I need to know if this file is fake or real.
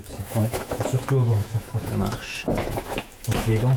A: fake